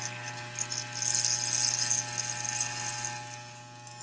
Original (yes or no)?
yes